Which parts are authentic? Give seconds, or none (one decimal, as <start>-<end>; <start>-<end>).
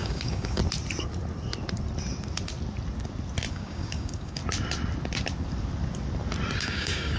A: 0.6-3.5; 4.4-6.6